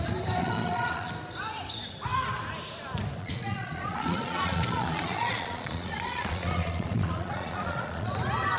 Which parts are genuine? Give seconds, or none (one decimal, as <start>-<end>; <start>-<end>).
0.0-0.4; 1.1-3.2; 8.1-8.6